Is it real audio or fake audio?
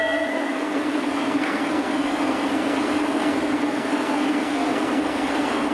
fake